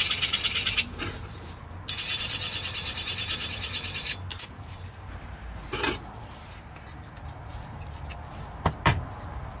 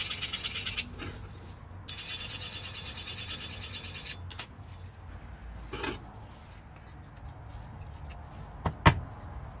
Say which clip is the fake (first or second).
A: first